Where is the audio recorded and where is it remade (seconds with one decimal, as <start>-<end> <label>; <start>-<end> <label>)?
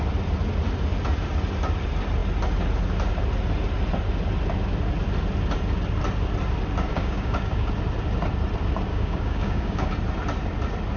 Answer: 0.0-6.9 recorded; 6.9-7.7 remade; 7.7-8.9 recorded; 8.9-9.9 remade; 9.9-11.0 recorded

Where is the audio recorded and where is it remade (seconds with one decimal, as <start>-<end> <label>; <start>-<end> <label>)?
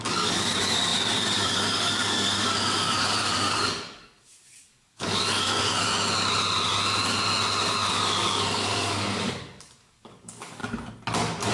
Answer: 0.0-5.9 remade; 5.9-7.9 recorded; 7.9-10.6 remade; 10.6-11.5 recorded